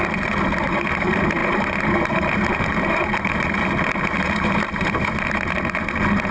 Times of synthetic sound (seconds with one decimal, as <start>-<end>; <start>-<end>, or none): none